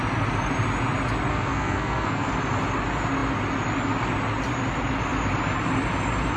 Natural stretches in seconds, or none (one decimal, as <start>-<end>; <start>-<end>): 0.0-1.3; 2.3-6.4